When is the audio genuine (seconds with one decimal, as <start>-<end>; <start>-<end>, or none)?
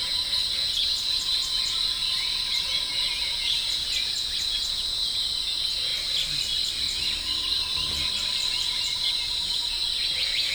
5.9-8.5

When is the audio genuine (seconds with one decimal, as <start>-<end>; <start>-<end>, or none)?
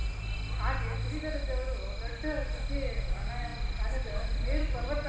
0.0-5.1